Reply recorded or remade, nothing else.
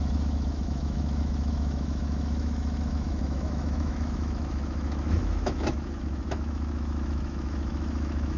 remade